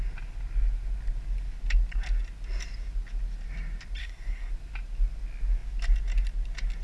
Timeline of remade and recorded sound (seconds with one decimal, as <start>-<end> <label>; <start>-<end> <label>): 0.0-4.0 recorded; 4.0-4.5 remade; 4.5-6.8 recorded